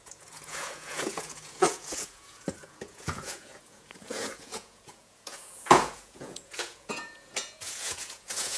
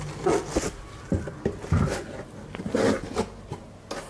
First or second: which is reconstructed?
first